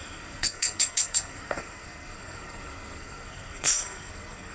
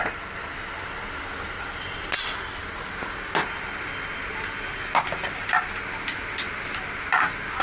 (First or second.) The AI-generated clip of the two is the first